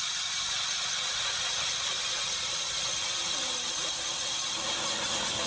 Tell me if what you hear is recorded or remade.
recorded